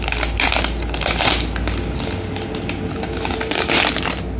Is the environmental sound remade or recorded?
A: recorded